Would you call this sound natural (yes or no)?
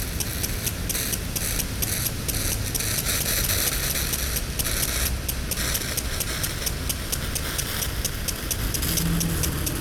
yes